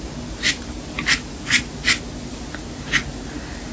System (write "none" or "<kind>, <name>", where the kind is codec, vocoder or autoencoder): none